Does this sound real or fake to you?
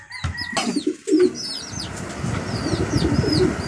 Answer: real